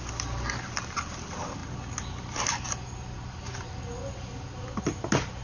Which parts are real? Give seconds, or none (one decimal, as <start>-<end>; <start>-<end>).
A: 0.0-5.4